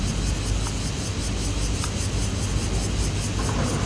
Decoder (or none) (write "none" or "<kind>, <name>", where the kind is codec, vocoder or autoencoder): none